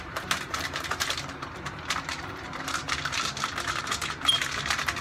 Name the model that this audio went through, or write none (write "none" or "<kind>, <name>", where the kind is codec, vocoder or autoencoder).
vocoder, BigVGAN v2